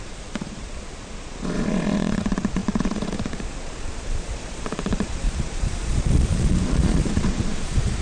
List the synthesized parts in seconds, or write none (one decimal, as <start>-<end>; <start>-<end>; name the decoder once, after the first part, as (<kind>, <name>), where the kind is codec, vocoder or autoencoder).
0.0-8.0 (vocoder, Vocos)